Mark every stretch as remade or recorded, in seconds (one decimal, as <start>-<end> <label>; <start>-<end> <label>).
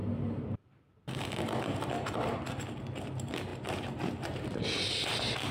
0.0-5.5 remade